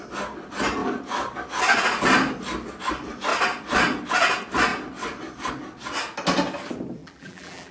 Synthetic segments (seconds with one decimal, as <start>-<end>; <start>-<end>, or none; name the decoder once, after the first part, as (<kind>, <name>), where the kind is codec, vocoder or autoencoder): 7.0-7.7 (vocoder, BigVGAN v2)